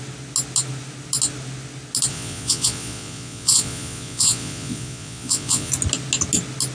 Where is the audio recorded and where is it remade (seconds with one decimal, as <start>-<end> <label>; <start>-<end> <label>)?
0.0-2.1 recorded; 2.1-5.7 remade; 5.7-6.7 recorded